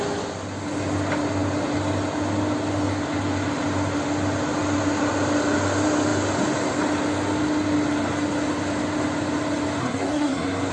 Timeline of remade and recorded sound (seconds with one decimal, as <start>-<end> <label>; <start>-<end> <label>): 0.0-9.8 recorded; 9.8-10.7 remade